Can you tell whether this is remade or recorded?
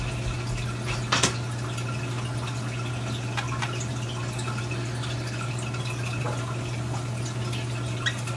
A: recorded